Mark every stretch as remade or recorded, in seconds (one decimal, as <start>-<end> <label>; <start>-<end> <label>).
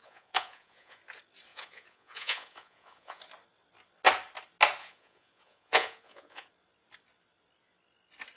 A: 0.0-1.0 remade; 1.0-1.5 recorded; 1.5-3.2 remade; 3.2-4.8 recorded; 4.8-6.5 remade; 6.5-8.4 recorded